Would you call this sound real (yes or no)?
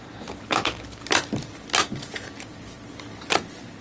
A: yes